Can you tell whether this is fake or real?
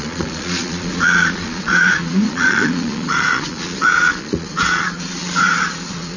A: fake